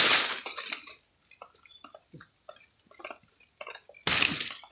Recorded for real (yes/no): yes